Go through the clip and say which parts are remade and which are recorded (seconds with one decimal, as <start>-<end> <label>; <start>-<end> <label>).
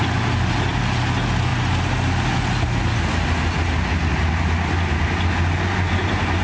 0.0-6.4 recorded